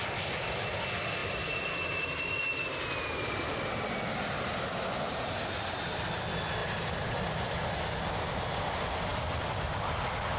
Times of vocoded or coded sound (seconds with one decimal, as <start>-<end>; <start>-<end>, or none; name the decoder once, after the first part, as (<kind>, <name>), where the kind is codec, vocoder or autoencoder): none